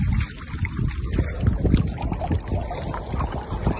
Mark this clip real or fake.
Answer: real